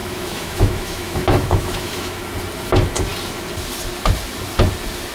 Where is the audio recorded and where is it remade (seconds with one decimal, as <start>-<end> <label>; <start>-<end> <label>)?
0.0-2.2 remade; 2.2-5.1 recorded